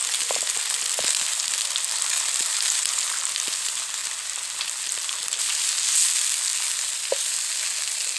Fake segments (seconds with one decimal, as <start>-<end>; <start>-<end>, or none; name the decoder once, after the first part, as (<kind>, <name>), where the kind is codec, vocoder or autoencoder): none